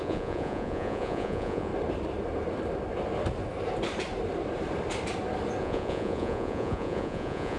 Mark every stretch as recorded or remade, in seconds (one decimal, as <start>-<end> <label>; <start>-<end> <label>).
0.0-1.7 remade; 1.7-5.6 recorded; 5.6-7.6 remade